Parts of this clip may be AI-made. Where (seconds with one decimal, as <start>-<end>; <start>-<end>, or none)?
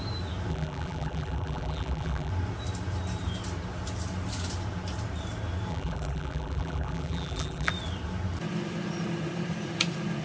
0.5-2.3; 5.7-7.7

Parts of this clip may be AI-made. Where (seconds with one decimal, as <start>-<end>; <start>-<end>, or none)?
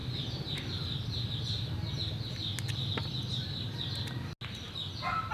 none